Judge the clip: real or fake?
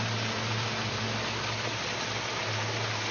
real